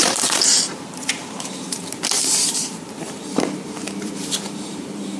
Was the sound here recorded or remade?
remade